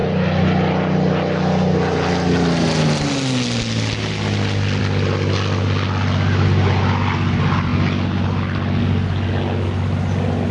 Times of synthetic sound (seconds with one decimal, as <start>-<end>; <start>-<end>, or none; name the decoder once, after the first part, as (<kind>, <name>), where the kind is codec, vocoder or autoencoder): none